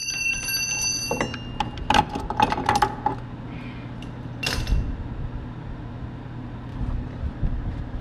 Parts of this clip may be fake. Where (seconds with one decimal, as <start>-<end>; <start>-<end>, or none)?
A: 6.7-7.3